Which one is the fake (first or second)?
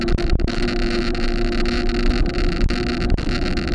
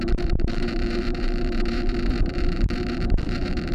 second